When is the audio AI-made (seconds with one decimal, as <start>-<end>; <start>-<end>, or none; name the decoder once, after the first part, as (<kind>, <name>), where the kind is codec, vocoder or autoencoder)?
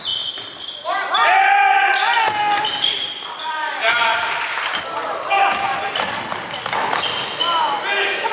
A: none